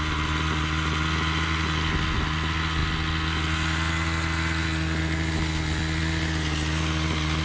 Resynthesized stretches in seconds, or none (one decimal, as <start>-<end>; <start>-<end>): none